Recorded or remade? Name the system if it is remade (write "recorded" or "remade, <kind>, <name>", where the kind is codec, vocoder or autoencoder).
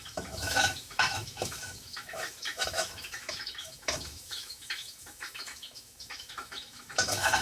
remade, autoencoder, DAC-VAE